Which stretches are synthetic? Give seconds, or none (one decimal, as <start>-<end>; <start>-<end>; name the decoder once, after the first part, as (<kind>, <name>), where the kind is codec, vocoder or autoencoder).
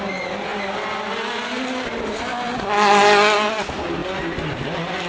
none